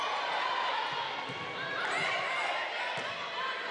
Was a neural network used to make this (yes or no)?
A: no